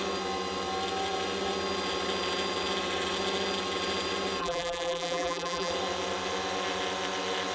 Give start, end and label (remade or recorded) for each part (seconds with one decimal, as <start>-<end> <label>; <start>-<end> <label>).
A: 0.0-4.4 recorded; 4.4-5.7 remade; 5.7-7.5 recorded